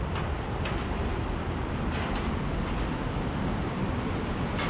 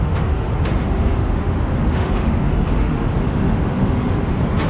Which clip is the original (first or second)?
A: first